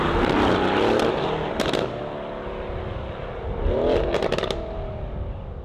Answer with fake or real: real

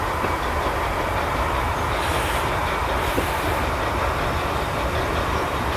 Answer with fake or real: real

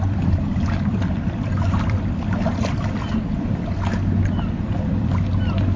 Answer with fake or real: fake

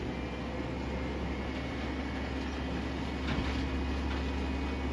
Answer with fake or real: real